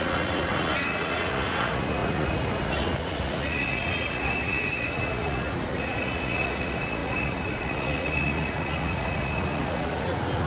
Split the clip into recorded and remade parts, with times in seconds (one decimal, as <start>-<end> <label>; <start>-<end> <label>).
0.0-10.5 remade